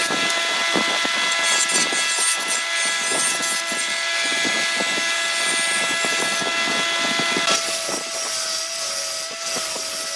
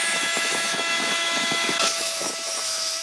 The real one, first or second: first